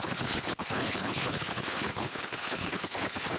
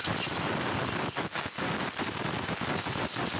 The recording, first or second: second